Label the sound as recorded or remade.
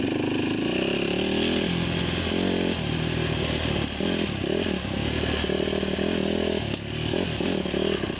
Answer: recorded